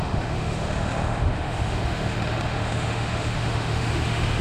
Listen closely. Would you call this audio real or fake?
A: fake